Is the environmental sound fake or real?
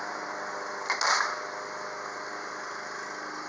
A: real